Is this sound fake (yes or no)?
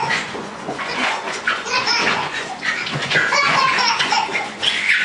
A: yes